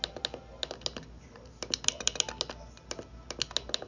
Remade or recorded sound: recorded